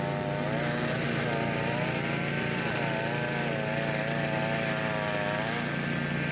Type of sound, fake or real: real